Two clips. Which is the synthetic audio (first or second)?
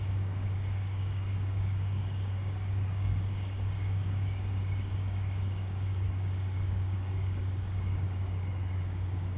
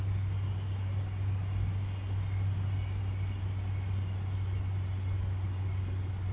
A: first